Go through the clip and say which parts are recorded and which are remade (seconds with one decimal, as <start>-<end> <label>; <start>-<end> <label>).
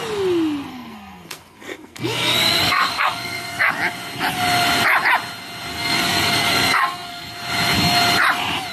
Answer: 0.0-0.7 recorded; 0.7-3.7 remade; 3.7-5.7 recorded; 5.7-7.3 remade; 7.3-8.7 recorded